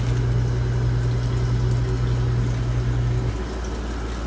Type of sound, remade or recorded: recorded